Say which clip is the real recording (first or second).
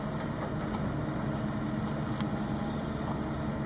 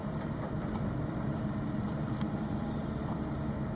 first